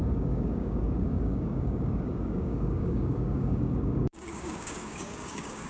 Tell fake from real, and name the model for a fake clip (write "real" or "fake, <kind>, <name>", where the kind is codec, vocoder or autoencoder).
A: fake, codec, DAC